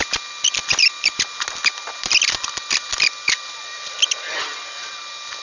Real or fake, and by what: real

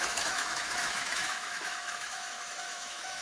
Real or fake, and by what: fake, autoencoder, DAC-VAE